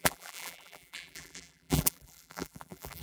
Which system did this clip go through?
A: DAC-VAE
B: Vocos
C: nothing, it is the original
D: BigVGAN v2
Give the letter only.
D